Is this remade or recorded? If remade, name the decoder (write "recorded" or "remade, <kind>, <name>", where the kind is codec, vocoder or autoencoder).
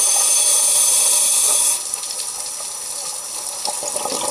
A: recorded